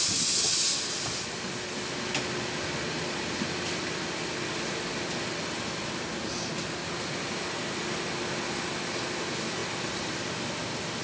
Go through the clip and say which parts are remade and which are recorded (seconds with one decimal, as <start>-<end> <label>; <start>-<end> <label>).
0.0-11.0 recorded